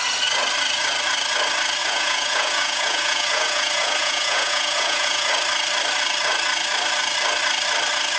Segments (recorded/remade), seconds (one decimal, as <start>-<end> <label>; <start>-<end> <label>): 0.0-1.8 recorded; 1.8-5.3 remade; 5.3-8.2 recorded